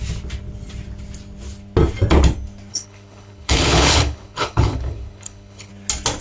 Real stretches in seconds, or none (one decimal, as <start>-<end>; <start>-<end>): 0.0-2.7; 5.7-6.2

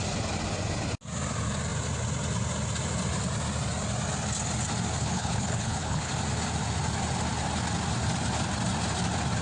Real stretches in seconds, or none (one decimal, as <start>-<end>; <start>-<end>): 0.0-5.0; 6.1-9.4

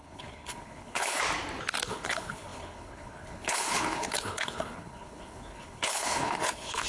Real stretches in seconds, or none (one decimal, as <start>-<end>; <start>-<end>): 1.2-1.9

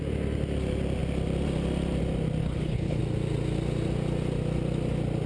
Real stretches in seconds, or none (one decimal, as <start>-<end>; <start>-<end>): 0.0-2.4; 3.0-5.3

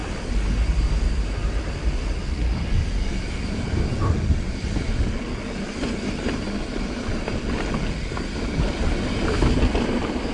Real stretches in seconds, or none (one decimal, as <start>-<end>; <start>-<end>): 0.0-10.3

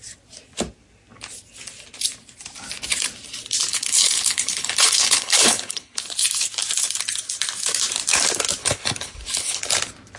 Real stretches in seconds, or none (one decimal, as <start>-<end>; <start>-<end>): 0.0-3.7; 6.0-8.6; 9.6-10.2